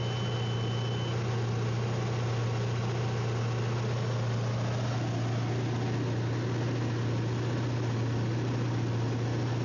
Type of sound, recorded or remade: recorded